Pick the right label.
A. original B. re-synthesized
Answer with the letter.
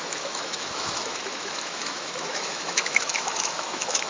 B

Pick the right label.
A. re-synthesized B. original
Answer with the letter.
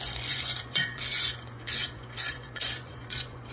A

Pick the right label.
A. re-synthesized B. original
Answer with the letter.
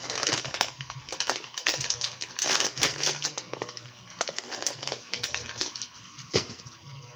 A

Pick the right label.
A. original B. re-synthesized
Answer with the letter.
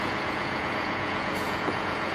B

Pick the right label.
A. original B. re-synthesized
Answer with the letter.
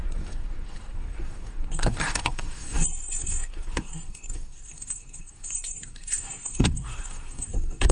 B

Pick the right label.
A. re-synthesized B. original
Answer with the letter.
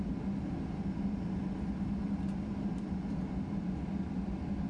B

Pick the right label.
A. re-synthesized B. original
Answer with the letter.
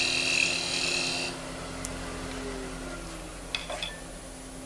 B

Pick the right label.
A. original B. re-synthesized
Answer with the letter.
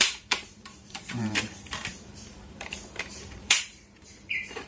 B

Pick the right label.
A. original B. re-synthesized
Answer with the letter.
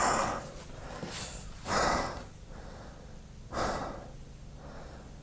A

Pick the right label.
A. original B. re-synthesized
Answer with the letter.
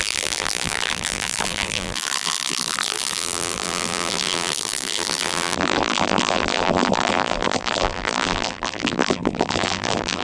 B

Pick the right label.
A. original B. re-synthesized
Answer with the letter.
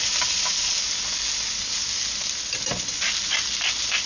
A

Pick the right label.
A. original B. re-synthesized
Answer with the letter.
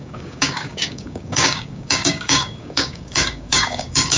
B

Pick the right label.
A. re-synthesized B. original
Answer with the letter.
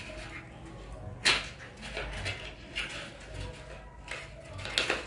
B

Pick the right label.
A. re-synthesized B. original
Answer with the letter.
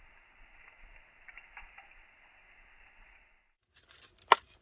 B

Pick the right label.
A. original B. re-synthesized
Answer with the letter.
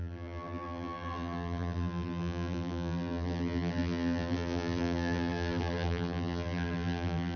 B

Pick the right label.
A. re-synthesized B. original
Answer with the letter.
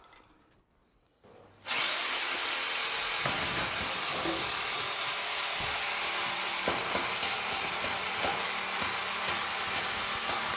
B